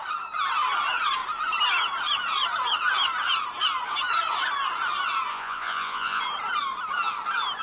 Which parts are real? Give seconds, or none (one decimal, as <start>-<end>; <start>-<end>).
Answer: 0.0-5.3; 6.2-7.6